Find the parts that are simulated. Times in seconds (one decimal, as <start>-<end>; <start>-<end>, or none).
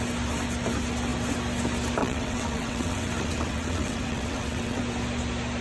2.0-4.8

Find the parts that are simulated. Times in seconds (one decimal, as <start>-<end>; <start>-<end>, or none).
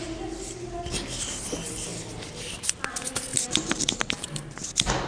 3.3-4.4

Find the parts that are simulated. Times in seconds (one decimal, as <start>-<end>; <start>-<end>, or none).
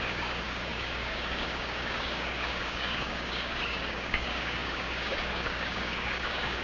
0.0-6.6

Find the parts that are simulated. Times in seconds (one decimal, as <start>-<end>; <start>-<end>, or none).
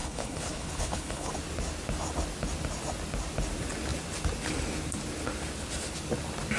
0.0-1.3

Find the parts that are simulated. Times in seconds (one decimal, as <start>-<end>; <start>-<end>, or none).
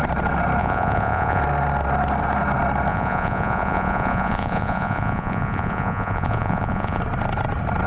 0.6-1.4; 2.9-7.0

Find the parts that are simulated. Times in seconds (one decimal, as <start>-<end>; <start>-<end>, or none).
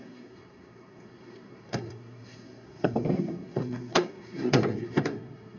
0.0-5.6